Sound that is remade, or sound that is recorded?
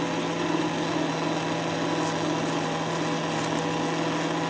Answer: recorded